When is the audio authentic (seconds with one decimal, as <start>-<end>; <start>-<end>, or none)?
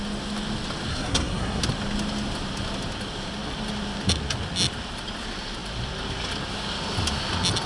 0.0-0.9; 1.6-7.7